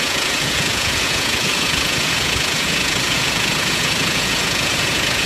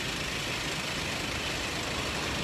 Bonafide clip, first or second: second